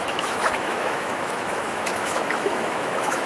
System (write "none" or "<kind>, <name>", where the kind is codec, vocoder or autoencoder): autoencoder, DAC-VAE